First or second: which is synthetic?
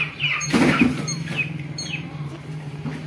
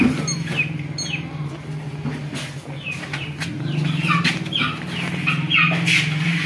first